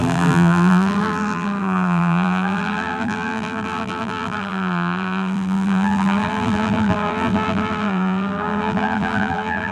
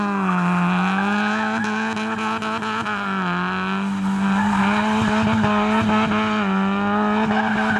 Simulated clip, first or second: first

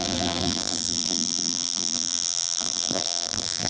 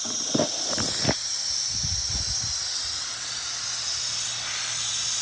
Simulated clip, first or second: first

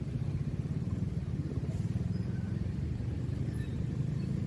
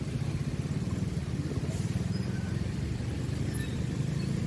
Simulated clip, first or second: first